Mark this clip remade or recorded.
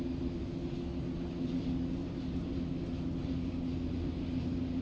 recorded